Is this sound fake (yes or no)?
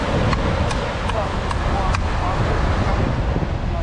no